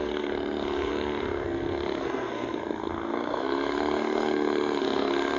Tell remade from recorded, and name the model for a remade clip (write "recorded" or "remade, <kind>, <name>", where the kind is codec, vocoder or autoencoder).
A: remade, codec, SNAC